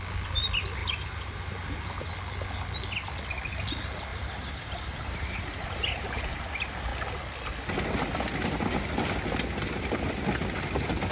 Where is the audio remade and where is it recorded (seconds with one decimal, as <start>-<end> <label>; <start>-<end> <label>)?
0.0-0.8 recorded; 0.8-2.1 remade; 2.1-4.1 recorded; 4.1-6.4 remade; 6.4-11.1 recorded